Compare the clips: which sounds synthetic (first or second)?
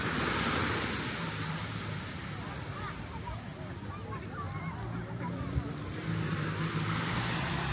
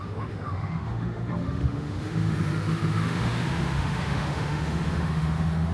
second